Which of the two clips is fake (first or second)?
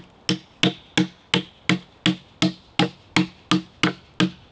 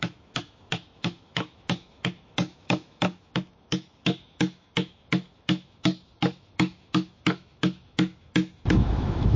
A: second